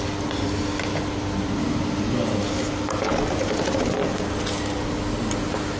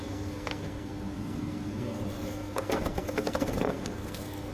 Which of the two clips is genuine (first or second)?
first